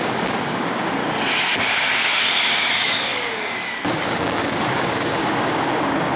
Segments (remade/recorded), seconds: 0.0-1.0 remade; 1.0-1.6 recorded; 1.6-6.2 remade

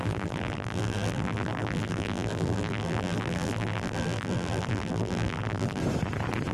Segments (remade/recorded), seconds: 0.0-5.8 remade; 5.8-6.5 recorded

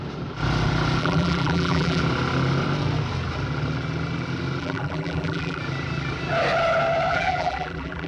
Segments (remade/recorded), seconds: 0.0-1.0 recorded; 1.0-2.0 remade; 2.0-4.6 recorded; 4.6-5.6 remade; 5.6-7.1 recorded; 7.1-8.1 remade